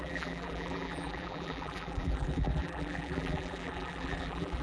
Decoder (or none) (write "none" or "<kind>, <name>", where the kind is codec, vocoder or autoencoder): vocoder, BigVGAN v2